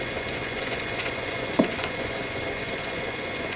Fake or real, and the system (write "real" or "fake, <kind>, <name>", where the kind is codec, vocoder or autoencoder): fake, vocoder, Vocos